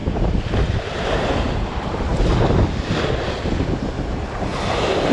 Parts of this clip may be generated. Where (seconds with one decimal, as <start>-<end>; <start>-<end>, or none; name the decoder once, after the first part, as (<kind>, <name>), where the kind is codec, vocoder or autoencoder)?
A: 0.0-3.1 (vocoder, BigVGAN v2)